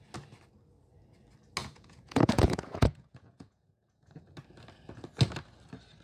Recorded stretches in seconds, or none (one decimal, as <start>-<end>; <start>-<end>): 0.0-1.6; 4.2-6.0